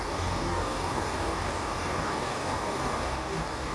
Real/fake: fake